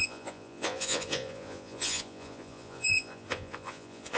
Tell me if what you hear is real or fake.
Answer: fake